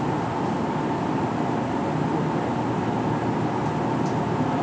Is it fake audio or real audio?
real